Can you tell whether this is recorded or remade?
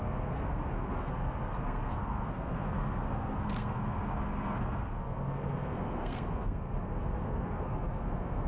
remade